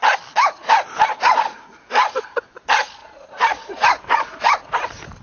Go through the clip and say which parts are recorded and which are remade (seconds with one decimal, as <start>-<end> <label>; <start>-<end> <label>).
0.0-1.1 recorded; 1.1-2.4 remade; 2.4-3.0 recorded; 3.0-5.2 remade